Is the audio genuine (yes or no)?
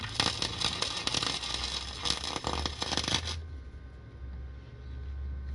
yes